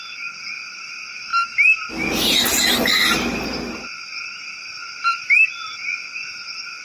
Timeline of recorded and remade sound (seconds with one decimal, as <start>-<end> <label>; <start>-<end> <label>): 0.0-4.8 recorded; 4.8-6.1 remade; 6.1-6.8 recorded